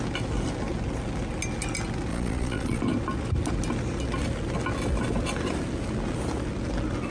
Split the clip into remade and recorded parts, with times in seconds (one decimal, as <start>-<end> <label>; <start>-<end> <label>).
0.0-2.1 recorded; 2.1-2.8 remade; 2.8-7.1 recorded